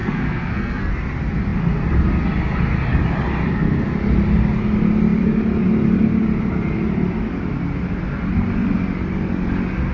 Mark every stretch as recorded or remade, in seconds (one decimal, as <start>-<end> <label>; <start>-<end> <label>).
0.0-0.9 remade; 0.9-9.9 recorded